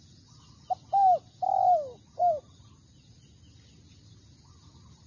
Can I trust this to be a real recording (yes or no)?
yes